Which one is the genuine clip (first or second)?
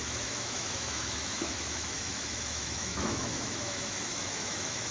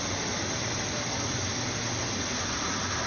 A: second